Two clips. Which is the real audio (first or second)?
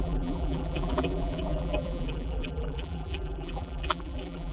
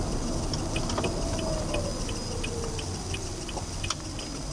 second